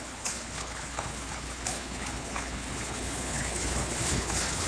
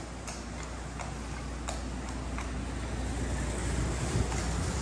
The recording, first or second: second